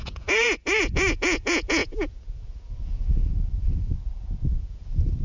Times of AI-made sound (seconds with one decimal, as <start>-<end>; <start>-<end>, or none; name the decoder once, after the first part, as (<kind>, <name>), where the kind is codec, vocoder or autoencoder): 0.0-5.2 (vocoder, Vocos)